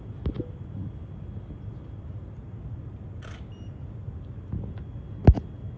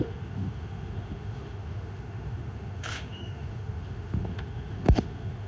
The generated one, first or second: second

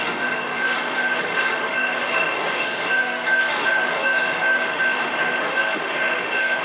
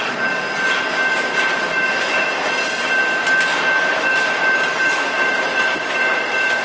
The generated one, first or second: first